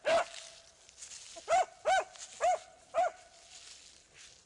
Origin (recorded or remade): recorded